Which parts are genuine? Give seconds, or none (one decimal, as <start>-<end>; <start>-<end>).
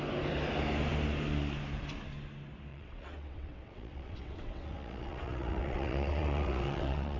0.0-2.7